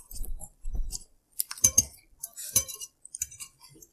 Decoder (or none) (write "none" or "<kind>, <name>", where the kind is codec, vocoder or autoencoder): vocoder, BigVGAN v2